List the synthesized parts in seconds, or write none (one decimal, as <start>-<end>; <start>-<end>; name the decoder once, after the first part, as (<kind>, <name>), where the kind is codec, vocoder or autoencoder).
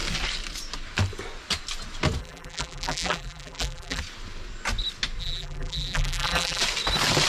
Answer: 2.2-4.0 (vocoder, BigVGAN v2); 5.2-6.6